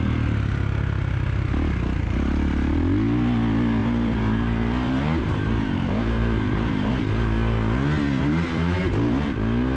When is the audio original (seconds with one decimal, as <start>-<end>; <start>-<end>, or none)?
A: 0.0-3.8; 6.9-8.2; 8.8-9.8